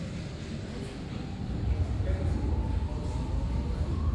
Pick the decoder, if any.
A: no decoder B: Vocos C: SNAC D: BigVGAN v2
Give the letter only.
A